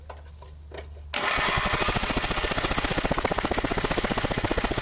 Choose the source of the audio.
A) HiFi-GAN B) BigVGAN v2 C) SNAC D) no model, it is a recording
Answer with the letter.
D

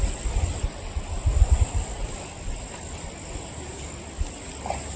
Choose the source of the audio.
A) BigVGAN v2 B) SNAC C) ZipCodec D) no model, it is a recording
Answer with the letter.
D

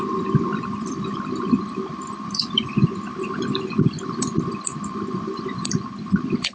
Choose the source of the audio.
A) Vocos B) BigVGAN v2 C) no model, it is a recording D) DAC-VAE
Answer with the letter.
B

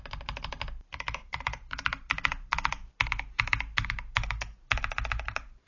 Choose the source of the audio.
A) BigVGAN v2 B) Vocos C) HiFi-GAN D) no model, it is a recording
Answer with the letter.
A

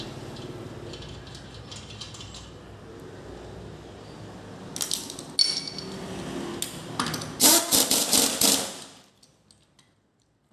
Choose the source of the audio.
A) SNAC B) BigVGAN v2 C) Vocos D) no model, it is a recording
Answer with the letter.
D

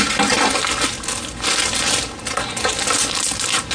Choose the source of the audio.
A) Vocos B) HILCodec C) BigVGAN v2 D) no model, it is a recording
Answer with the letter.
D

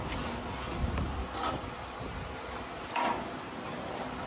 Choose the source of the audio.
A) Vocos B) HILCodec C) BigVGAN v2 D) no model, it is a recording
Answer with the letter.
D